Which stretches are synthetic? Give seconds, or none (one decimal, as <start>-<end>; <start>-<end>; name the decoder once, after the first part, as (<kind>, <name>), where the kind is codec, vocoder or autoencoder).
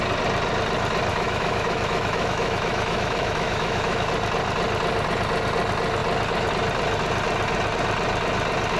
1.1-4.1 (autoencoder, DAC-VAE)